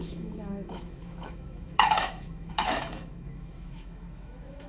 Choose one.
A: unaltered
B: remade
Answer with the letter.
B